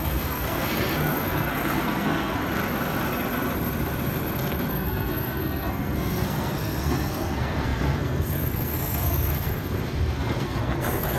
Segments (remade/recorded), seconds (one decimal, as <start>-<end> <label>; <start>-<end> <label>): 0.0-2.4 remade; 2.4-4.7 recorded; 4.7-11.2 remade

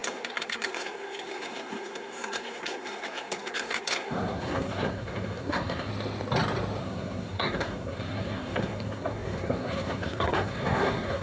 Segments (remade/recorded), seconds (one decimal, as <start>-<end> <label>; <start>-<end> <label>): 0.0-5.9 remade; 5.9-6.8 recorded; 6.8-11.2 remade